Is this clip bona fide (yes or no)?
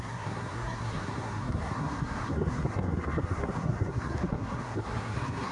no